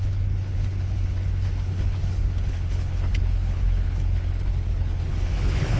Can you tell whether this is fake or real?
fake